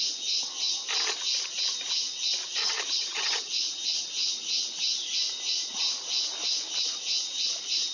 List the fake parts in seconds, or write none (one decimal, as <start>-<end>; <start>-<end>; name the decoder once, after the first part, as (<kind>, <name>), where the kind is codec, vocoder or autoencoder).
2.6-3.5 (vocoder, HiFi-GAN)